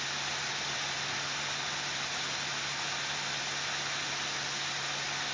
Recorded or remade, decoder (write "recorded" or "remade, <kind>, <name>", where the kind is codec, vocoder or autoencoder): recorded